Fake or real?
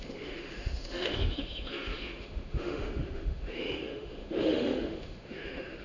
fake